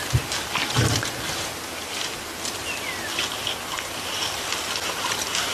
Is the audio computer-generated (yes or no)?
no